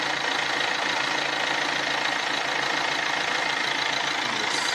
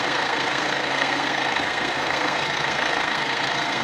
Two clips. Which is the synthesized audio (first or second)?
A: second